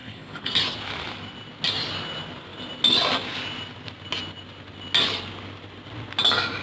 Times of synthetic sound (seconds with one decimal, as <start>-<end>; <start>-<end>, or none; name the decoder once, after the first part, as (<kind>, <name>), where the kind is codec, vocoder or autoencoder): 0.0-0.5 (codec, HILCodec)